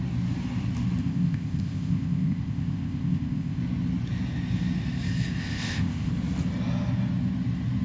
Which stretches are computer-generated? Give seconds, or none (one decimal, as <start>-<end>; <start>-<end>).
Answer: 1.0-3.6; 5.4-6.1